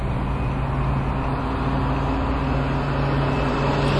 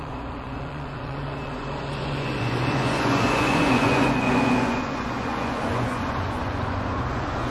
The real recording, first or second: first